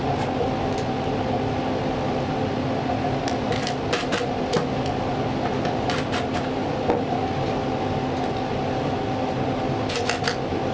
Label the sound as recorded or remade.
recorded